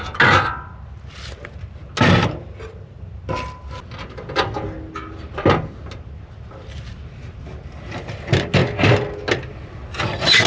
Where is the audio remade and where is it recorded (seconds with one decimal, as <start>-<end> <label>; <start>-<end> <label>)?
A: 0.0-10.5 recorded